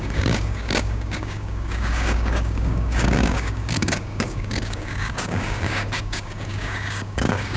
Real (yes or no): no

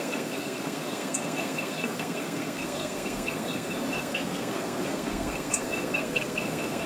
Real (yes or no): no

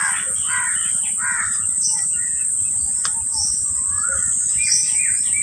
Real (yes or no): yes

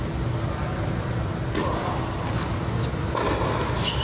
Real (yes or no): yes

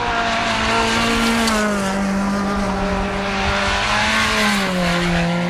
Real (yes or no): yes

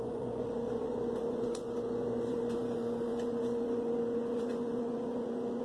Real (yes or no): no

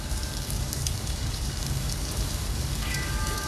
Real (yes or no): no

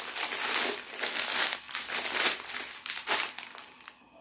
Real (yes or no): yes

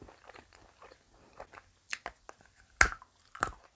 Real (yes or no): yes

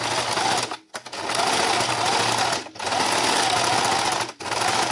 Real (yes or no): yes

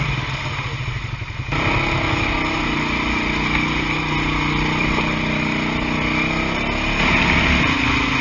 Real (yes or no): yes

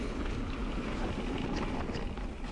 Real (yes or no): yes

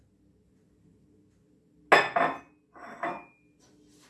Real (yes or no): yes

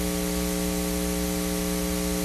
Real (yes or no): yes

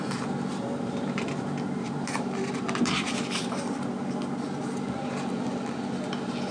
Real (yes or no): no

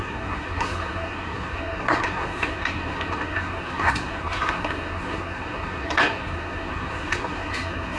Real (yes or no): no